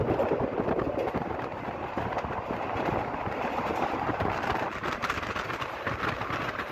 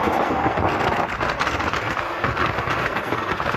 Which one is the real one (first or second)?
first